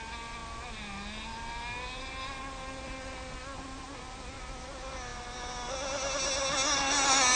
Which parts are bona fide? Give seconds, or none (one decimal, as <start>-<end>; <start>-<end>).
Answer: 0.0-7.4